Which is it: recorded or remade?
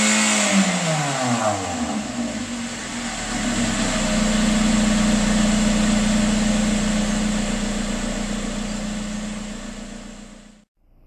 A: recorded